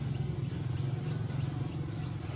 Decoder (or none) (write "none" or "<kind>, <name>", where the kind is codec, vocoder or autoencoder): none